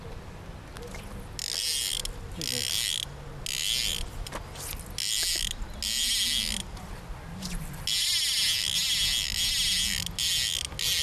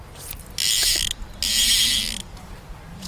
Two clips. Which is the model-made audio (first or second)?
second